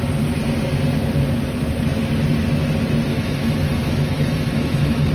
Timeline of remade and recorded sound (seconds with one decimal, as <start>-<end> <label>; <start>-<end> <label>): 0.0-3.1 recorded; 3.1-5.1 remade